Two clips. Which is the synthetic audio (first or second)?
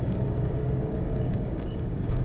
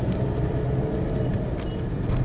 first